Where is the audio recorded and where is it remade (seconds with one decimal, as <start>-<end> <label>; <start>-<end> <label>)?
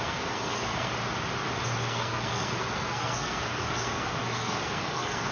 0.0-0.9 remade; 0.9-1.8 recorded; 1.8-5.3 remade